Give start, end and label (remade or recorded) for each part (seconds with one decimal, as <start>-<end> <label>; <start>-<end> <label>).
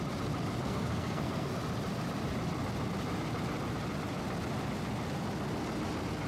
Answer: 0.0-0.6 recorded; 0.6-1.5 remade; 1.5-6.3 recorded